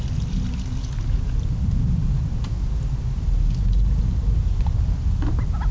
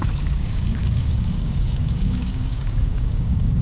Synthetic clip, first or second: second